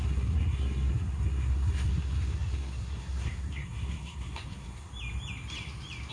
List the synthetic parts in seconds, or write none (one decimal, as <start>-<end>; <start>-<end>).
0.0-4.9